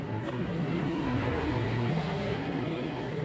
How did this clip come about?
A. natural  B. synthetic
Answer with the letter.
B